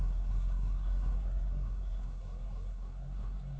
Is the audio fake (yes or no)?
yes